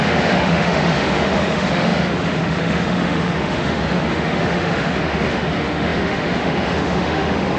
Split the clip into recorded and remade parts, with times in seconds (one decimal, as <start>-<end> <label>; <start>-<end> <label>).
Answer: 0.0-7.6 remade